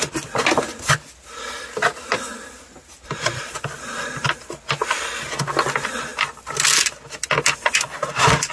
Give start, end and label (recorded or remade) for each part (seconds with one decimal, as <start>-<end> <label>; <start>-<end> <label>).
0.0-8.5 recorded